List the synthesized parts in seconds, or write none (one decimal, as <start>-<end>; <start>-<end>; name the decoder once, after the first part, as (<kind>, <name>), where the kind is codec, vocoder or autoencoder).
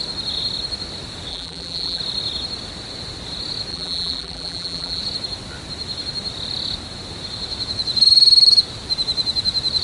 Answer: 1.3-2.0 (vocoder, BigVGAN v2); 3.7-5.0